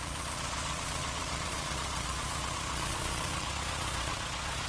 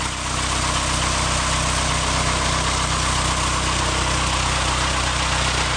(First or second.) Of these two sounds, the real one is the second